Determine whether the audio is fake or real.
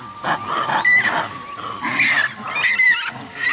real